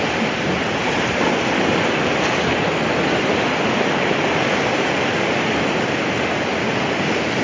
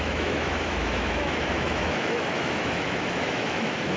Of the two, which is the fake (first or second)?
second